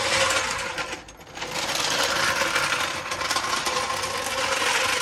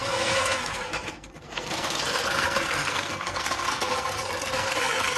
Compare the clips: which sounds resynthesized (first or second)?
second